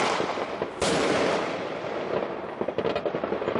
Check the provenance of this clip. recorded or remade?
recorded